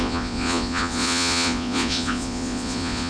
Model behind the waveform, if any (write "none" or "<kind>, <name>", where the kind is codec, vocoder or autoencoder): vocoder, Vocos